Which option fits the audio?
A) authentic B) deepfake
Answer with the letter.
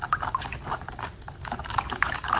B